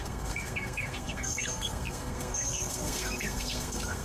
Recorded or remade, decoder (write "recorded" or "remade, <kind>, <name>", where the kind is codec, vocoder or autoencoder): remade, codec, SNAC